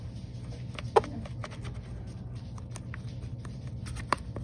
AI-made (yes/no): no